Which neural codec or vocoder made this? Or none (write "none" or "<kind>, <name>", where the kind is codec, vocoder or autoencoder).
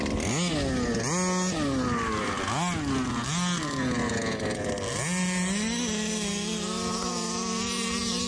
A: none